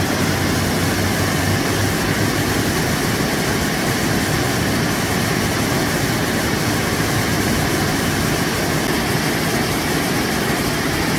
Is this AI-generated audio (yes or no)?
no